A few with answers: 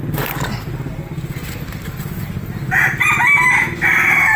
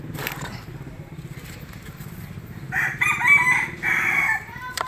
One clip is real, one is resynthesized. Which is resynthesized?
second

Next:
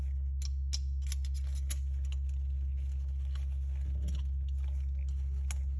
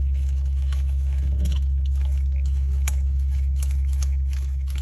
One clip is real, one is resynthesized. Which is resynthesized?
second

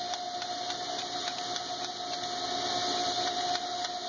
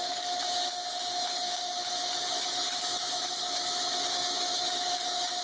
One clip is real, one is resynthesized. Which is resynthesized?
second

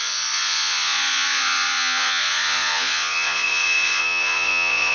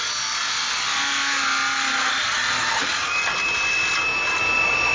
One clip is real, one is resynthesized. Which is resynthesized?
first